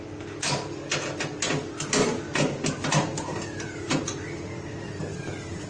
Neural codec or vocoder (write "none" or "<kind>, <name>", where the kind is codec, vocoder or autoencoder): none